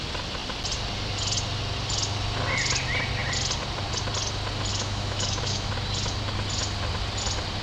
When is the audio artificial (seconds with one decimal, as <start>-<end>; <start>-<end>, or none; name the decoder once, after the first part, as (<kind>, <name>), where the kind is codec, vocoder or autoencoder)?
4.7-5.7 (autoencoder, DAC-VAE)